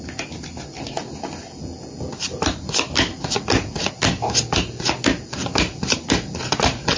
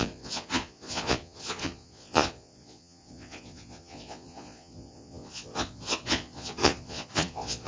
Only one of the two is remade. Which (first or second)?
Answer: second